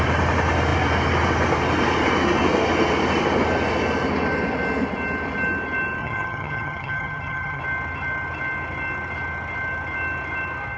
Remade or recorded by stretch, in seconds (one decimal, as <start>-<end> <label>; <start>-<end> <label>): 0.0-6.0 recorded; 6.0-7.6 remade; 7.6-10.8 recorded